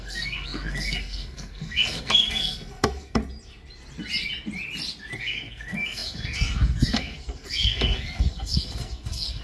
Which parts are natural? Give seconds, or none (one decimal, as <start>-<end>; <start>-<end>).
3.2-5.2